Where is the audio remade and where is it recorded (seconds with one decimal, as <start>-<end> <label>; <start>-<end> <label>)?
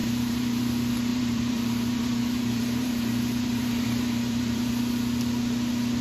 0.0-0.6 remade; 0.6-1.1 recorded; 1.1-4.7 remade; 4.7-6.0 recorded